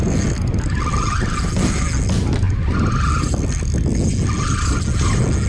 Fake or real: real